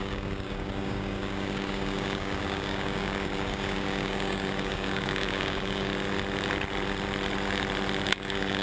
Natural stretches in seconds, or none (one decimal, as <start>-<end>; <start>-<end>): 5.9-8.1